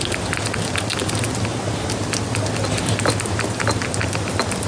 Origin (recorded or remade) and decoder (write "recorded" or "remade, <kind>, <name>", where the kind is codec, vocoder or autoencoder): recorded